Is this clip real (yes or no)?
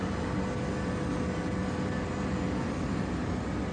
yes